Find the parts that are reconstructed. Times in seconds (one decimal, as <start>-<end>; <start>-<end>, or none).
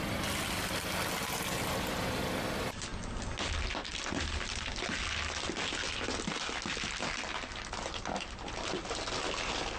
none